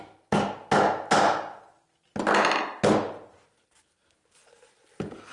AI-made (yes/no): no